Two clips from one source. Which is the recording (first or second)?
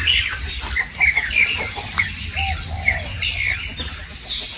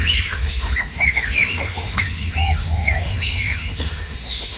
first